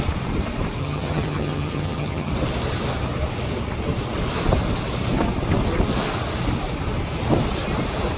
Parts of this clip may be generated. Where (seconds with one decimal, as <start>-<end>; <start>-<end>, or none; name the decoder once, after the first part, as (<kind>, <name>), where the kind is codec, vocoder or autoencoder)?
0.8-2.3 (vocoder, HiFi-GAN)